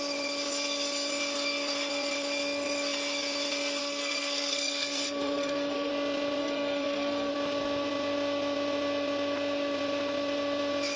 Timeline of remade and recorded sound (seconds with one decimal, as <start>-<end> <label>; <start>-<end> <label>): 0.0-3.8 recorded; 3.8-5.9 remade; 5.9-6.4 recorded; 6.4-7.3 remade; 7.3-11.0 recorded